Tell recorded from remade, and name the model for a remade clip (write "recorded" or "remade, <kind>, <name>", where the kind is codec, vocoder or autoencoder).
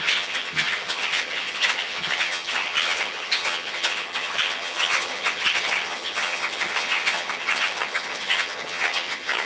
remade, vocoder, HiFi-GAN